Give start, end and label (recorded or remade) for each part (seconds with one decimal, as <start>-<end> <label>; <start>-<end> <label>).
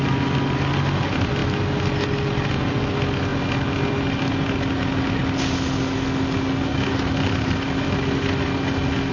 0.0-9.1 recorded